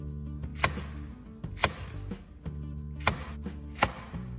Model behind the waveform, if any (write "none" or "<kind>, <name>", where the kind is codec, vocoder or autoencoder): none